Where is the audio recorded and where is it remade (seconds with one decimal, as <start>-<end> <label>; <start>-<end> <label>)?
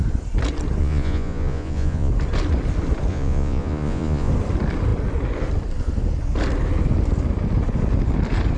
0.0-0.8 recorded; 0.8-2.1 remade; 2.1-3.1 recorded; 3.1-4.3 remade; 4.3-8.6 recorded